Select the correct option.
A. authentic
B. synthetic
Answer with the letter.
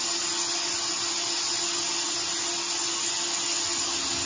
A